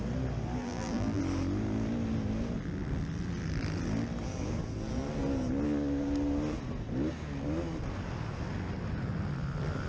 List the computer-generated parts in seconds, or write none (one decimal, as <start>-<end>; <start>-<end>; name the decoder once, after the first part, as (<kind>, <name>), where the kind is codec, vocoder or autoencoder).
0.6-1.2 (vocoder, BigVGAN v2)